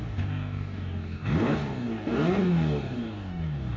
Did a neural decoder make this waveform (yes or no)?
yes